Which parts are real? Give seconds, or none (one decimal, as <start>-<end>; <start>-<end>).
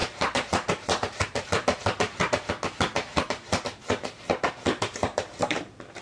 2.5-3.1; 4.5-5.0; 5.6-6.0